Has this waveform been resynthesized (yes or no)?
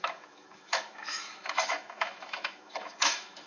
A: yes